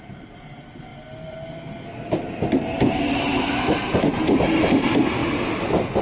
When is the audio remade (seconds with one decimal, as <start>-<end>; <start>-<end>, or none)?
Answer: 0.0-0.9; 2.9-6.0